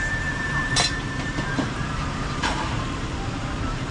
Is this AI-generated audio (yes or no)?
yes